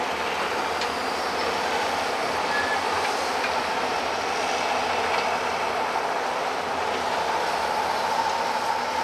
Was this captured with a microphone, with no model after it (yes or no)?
yes